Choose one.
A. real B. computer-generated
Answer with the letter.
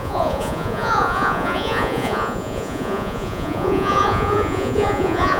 B